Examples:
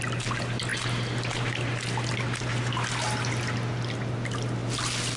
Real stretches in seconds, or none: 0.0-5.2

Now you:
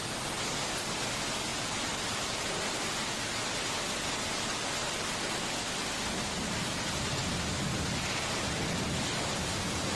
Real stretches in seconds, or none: 0.0-1.5; 2.7-4.3; 6.7-7.2; 8.6-9.9

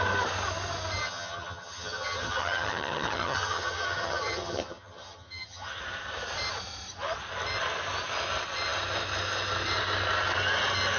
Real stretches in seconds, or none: 0.0-1.0; 5.8-11.0

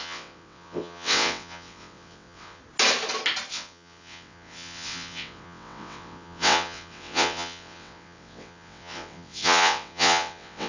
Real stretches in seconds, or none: 2.6-3.5

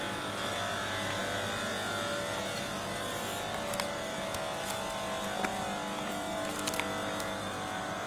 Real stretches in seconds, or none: 0.0-8.1

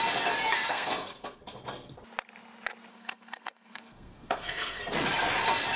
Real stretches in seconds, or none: 0.0-0.7; 1.4-2.9; 4.8-5.8

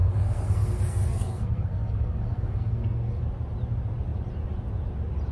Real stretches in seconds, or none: 3.2-5.3

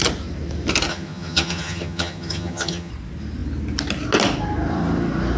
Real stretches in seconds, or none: 0.0-0.9; 2.9-5.4